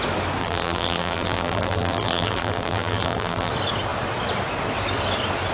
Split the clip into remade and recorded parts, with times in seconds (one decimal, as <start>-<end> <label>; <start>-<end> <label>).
0.0-0.4 recorded; 0.4-3.5 remade; 3.5-5.5 recorded